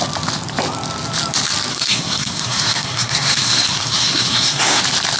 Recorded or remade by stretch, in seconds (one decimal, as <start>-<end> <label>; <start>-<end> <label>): 0.0-1.7 recorded; 1.7-4.8 remade; 4.8-5.2 recorded